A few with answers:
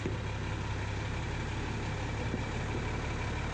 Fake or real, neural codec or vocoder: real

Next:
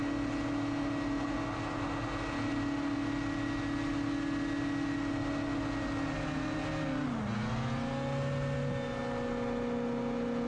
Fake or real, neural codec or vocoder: real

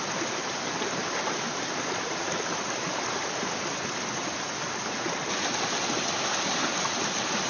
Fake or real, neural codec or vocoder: real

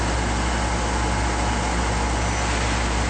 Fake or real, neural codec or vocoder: real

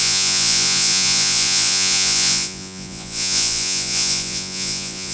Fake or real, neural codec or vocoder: fake, vocoder, Vocos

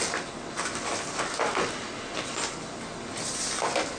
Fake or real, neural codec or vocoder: real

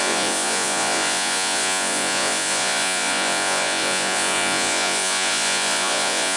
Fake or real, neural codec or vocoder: fake, vocoder, Vocos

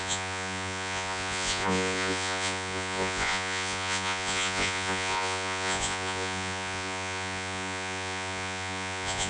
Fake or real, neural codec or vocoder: fake, vocoder, Vocos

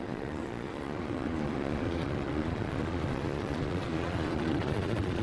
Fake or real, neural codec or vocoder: fake, vocoder, Vocos